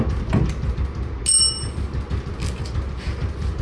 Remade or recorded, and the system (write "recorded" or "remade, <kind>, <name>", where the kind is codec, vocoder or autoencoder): recorded